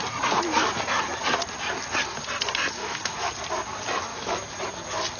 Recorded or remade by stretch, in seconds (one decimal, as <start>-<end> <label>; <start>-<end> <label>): 0.0-2.8 recorded; 2.8-3.3 remade; 3.3-4.1 recorded; 4.1-4.6 remade; 4.6-5.2 recorded